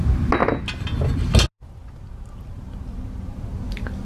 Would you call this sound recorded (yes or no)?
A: yes